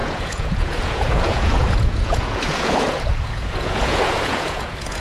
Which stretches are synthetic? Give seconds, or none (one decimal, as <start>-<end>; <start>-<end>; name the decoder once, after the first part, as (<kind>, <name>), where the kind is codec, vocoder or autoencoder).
0.0-5.0 (vocoder, Vocos)